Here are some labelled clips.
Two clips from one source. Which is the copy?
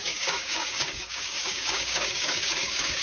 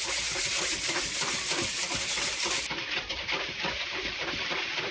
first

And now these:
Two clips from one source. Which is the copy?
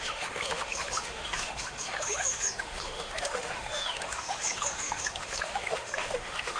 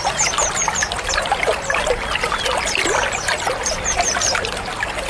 first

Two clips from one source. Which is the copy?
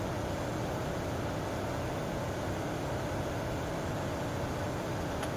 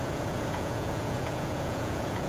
second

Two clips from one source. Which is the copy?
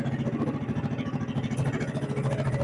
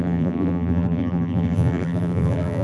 second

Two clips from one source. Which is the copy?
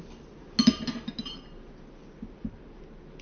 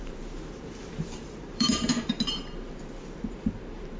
second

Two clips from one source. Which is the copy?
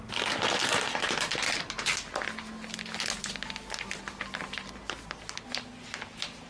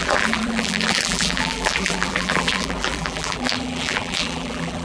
second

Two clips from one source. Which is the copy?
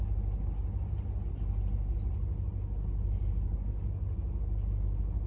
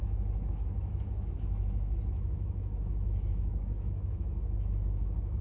second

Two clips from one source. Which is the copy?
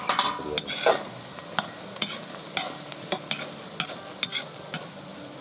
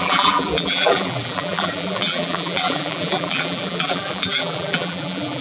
second